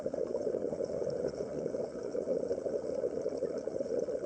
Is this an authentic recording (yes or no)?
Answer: no